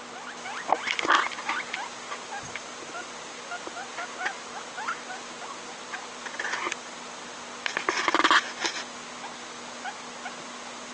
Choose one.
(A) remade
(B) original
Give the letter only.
B